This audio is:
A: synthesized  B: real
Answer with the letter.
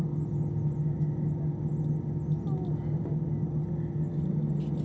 B